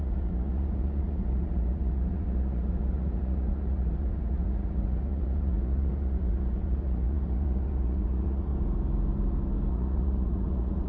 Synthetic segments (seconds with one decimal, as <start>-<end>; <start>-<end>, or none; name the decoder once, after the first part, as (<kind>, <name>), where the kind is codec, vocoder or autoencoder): 0.0-8.5 (vocoder, Vocos); 9.7-10.9